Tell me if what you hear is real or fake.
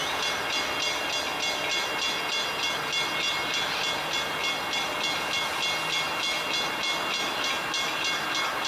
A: real